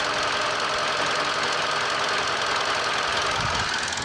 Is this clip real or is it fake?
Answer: real